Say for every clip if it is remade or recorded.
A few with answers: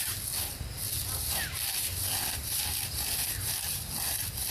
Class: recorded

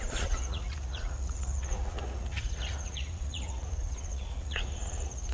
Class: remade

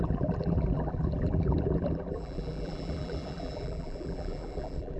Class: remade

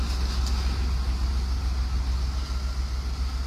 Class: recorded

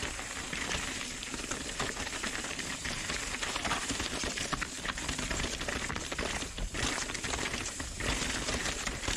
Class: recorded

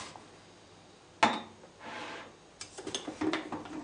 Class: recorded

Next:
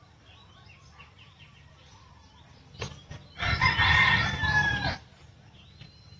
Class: remade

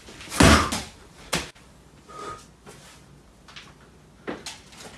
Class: recorded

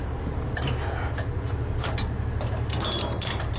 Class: recorded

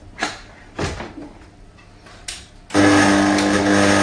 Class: recorded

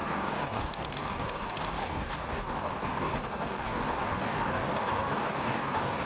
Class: remade